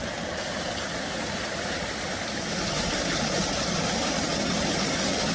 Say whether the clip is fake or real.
real